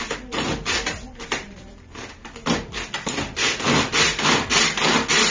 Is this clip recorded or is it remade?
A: recorded